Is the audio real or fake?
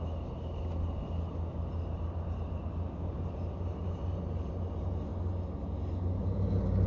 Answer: real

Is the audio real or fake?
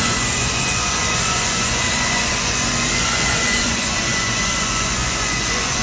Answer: fake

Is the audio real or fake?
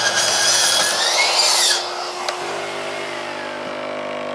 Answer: real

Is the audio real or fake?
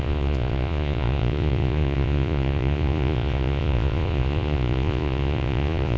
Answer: fake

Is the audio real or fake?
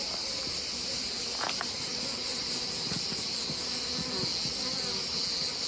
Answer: real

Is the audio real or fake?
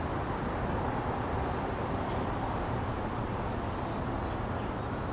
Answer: real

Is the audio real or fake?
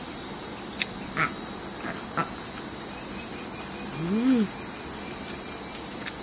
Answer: real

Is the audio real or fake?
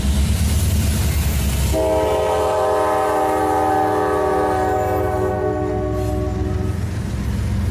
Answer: real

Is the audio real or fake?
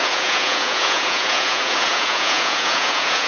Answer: fake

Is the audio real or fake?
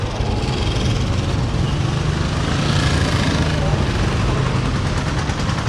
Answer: real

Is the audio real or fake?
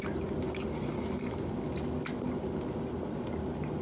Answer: real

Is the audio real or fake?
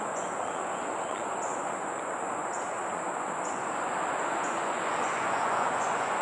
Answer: fake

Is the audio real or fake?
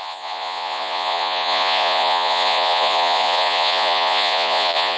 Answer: fake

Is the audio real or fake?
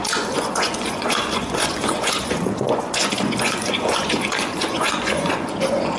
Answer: fake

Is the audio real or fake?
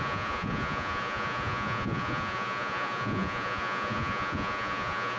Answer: fake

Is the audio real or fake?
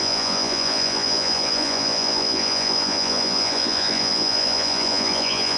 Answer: fake